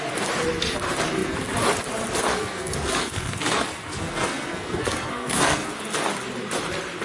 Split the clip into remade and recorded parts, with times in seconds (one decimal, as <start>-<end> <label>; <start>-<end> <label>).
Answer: 0.0-2.3 recorded; 2.3-5.7 remade; 5.7-7.0 recorded